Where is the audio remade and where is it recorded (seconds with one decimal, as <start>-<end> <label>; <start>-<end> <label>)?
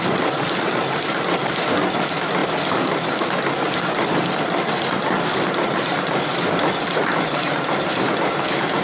0.0-8.8 recorded